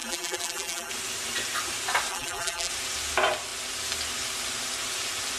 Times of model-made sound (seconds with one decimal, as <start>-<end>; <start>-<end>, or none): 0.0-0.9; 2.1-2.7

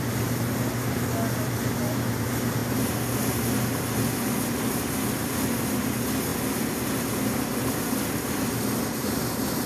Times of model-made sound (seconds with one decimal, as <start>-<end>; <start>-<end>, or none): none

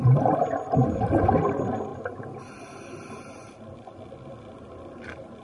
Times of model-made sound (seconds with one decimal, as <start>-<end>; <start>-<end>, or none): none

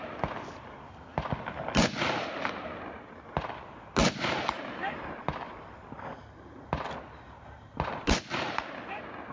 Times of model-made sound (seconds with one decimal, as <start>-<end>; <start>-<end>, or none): 4.0-5.2

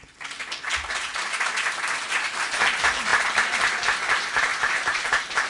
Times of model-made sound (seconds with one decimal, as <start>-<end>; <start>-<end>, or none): 4.5-5.5